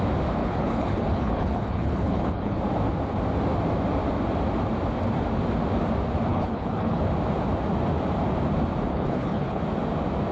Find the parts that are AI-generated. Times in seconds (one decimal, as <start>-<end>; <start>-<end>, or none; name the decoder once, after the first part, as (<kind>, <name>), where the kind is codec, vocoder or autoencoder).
0.4-2.6 (codec, HILCodec); 6.3-7.0; 8.9-9.6